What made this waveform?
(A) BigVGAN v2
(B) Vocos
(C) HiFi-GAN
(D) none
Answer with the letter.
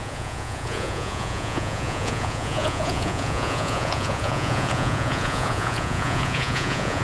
B